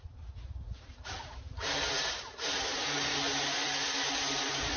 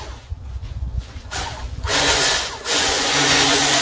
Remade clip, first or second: second